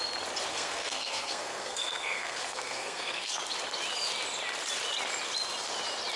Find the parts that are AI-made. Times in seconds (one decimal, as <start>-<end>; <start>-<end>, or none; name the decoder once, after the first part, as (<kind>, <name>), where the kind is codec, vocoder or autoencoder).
0.5-3.3 (codec, SNAC)